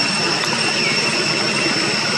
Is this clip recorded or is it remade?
recorded